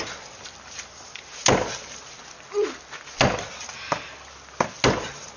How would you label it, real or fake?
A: real